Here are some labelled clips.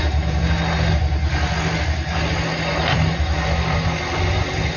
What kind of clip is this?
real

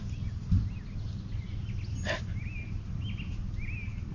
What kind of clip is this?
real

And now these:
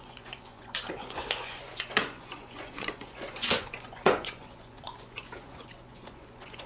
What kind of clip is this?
fake